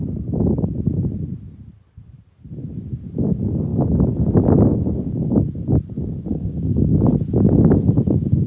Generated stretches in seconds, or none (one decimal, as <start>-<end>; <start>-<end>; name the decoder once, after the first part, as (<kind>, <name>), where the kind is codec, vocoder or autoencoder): 6.3-7.1 (codec, DAC)